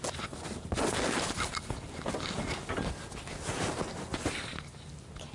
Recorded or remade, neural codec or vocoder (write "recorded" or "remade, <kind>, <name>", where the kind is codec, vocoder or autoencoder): recorded